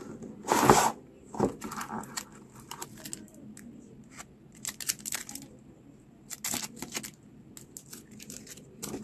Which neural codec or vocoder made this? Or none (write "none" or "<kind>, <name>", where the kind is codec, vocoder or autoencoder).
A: none